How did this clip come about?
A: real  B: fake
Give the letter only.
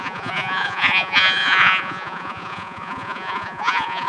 B